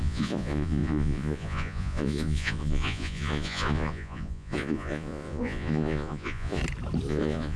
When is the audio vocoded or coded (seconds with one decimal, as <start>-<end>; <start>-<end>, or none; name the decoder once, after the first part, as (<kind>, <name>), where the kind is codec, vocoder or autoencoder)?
0.0-6.6 (vocoder, Vocos); 7.1-7.6